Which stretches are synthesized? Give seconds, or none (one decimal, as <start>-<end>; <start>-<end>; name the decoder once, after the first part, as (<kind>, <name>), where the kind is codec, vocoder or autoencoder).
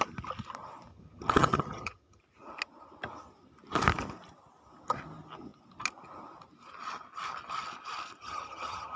0.9-2.2 (vocoder, HiFi-GAN); 8.2-9.0